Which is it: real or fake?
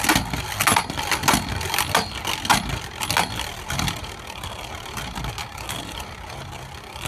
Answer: real